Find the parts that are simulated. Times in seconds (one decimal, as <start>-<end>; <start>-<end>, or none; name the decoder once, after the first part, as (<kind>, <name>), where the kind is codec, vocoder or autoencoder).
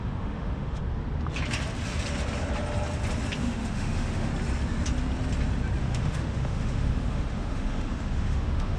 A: 0.0-0.8 (autoencoder, DAC-VAE); 3.4-4.3; 5.8-8.8